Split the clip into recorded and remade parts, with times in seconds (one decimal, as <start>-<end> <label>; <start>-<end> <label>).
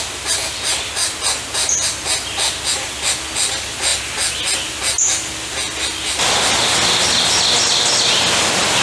0.0-8.8 recorded